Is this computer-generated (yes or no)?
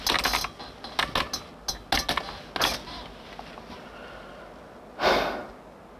no